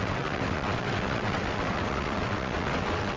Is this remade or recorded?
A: remade